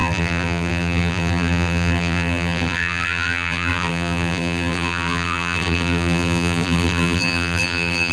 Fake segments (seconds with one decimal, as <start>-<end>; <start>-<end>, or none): 0.0-8.1